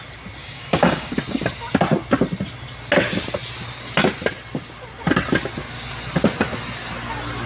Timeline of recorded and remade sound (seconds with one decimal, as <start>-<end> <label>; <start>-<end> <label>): 0.0-0.4 recorded; 0.4-1.1 remade; 1.1-7.5 recorded